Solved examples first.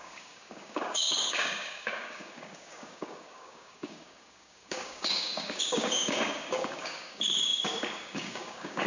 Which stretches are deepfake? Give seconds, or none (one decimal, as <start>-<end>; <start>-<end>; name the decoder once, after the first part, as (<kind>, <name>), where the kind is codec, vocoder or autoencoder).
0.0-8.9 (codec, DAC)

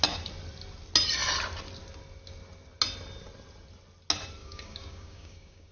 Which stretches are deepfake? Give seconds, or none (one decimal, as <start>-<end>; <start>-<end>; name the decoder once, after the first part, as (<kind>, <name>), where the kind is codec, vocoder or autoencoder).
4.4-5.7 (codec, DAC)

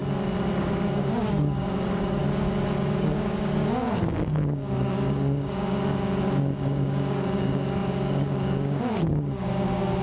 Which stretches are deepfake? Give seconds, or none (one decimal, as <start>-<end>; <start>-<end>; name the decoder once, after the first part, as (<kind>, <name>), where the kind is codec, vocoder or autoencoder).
0.6-2.2 (codec, DAC); 2.8-10.0

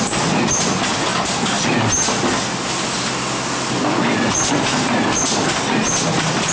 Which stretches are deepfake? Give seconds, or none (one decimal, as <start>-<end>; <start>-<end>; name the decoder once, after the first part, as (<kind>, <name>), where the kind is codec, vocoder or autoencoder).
none